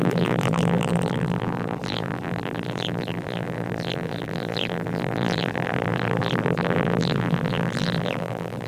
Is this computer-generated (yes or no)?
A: yes